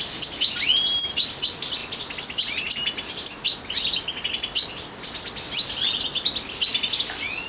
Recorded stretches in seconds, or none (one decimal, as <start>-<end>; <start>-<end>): 0.0-7.5